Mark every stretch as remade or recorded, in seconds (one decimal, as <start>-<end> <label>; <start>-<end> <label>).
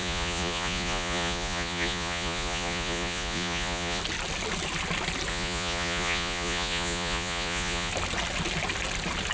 0.0-4.0 remade; 4.0-5.3 recorded; 5.3-7.9 remade; 7.9-9.3 recorded